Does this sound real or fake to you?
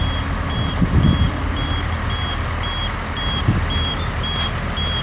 real